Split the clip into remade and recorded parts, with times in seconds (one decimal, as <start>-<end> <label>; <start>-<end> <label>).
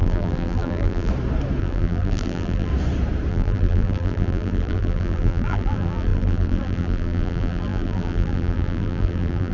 0.0-1.1 remade; 1.1-1.6 recorded; 1.6-2.7 remade; 2.7-3.3 recorded; 3.3-9.5 remade